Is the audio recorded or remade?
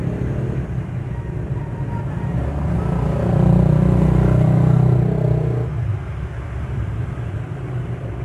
recorded